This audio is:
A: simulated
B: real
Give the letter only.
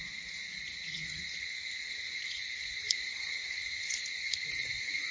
A